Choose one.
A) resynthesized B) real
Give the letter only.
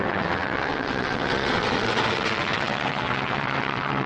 A